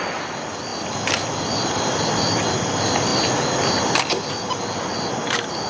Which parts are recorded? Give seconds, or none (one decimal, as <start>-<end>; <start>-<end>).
0.0-5.7